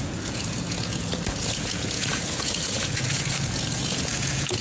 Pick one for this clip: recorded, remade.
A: remade